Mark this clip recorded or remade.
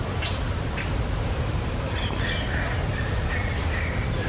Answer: recorded